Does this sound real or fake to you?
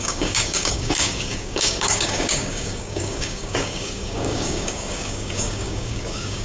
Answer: fake